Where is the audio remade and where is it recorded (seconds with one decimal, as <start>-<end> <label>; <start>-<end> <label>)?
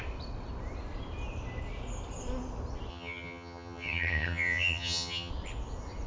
0.0-2.9 recorded; 2.9-5.3 remade; 5.3-6.1 recorded